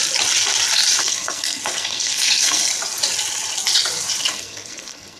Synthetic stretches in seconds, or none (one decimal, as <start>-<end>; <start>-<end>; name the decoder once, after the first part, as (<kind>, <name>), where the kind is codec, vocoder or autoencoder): 1.0-2.7 (codec, SNAC); 4.3-5.2